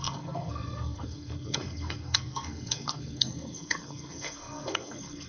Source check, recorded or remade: remade